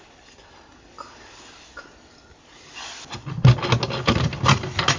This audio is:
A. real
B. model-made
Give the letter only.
A